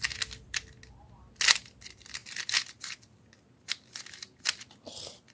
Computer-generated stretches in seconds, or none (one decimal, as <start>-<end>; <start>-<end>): none